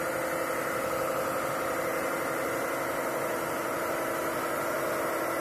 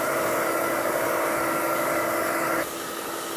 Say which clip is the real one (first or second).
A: first